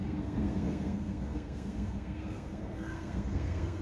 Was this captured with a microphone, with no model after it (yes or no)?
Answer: no